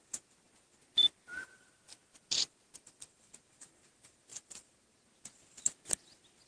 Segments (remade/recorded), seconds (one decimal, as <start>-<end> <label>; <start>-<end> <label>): 0.0-1.9 recorded; 1.9-3.7 remade; 3.7-6.5 recorded